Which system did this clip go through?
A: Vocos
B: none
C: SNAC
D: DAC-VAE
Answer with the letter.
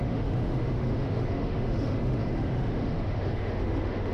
D